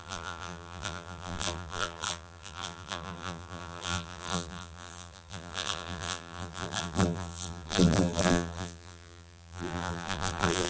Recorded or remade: remade